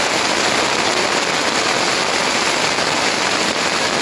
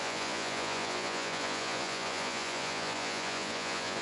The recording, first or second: first